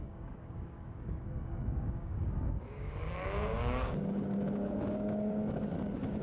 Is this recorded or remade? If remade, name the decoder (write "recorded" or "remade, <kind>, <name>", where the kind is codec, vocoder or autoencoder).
remade, codec, DAC